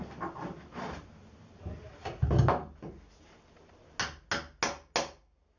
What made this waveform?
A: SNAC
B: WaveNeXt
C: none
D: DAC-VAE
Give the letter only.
C